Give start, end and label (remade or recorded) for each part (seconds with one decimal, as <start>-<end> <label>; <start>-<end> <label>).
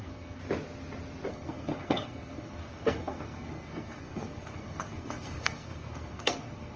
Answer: 0.0-0.4 remade; 0.4-1.3 recorded; 1.3-6.8 remade